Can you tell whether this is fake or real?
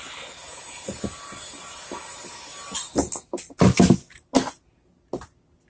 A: real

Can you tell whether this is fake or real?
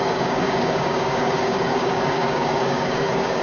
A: fake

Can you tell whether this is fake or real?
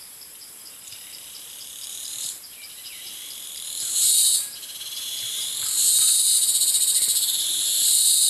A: fake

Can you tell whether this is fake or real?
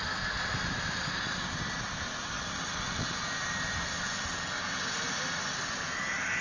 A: real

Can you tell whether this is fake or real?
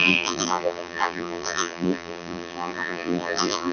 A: fake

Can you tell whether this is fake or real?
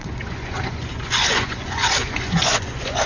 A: fake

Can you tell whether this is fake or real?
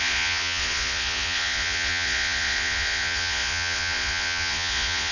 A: fake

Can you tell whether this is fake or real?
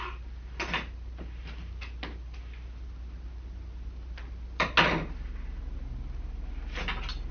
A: real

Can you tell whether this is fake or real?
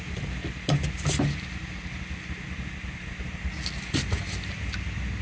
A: real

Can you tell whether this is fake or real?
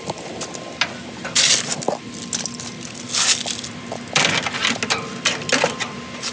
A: real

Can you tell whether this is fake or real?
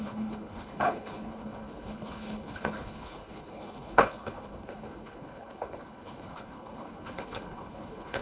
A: fake